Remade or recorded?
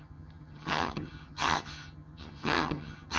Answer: remade